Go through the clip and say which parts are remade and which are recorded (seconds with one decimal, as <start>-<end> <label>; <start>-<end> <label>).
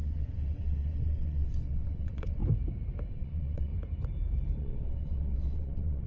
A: 0.0-2.4 remade; 2.4-3.1 recorded; 3.1-3.7 remade; 3.7-4.6 recorded; 4.6-6.1 remade